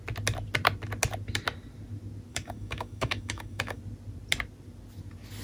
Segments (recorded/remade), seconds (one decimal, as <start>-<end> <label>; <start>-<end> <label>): 0.0-2.3 recorded; 2.3-3.8 remade; 3.8-5.4 recorded